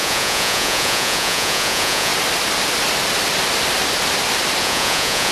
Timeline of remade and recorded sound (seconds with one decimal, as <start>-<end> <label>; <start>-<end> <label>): 0.0-2.1 remade; 2.1-4.6 recorded; 4.6-5.3 remade